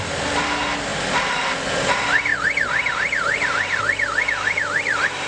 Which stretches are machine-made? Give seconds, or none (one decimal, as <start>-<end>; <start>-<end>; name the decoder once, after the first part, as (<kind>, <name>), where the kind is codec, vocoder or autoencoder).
none